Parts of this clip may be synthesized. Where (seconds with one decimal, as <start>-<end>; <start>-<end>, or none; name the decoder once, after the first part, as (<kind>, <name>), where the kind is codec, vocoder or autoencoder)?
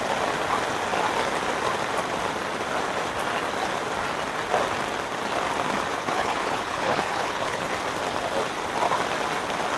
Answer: 5.9-7.7 (codec, HILCodec)